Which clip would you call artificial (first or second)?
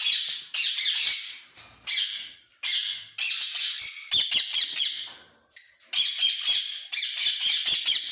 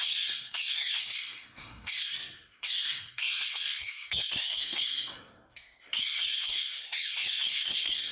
second